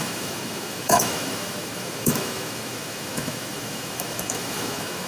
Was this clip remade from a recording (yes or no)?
yes